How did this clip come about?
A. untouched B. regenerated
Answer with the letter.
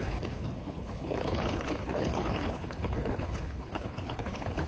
B